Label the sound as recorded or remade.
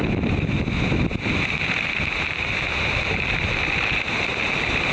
recorded